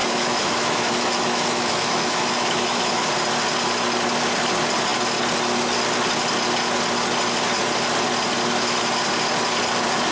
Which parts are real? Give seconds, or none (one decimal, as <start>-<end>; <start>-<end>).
3.1-10.1